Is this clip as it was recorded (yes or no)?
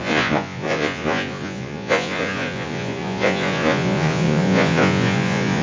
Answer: no